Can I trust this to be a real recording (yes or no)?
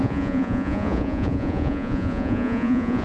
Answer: no